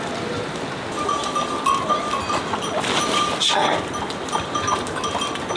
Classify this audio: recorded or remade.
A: recorded